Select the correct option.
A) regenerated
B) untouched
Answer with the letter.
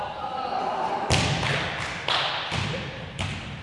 A